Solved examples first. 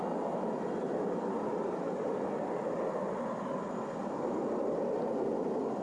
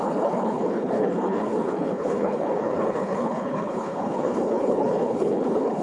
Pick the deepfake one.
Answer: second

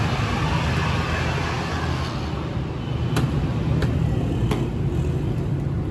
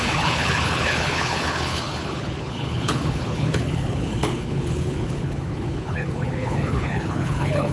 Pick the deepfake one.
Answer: second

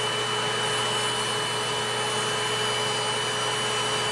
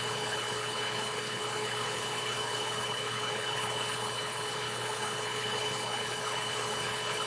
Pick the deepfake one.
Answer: second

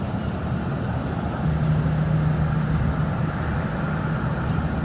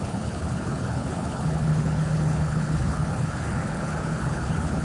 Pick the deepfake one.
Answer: second